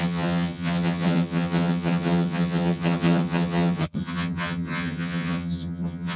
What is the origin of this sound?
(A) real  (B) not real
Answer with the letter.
B